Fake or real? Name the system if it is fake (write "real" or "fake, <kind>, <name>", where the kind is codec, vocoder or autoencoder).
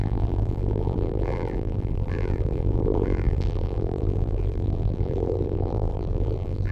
fake, vocoder, BigVGAN v2